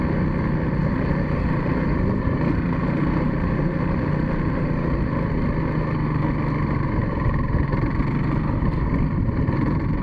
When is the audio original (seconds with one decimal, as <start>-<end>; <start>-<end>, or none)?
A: 0.0-0.8; 4.7-7.0; 8.0-10.0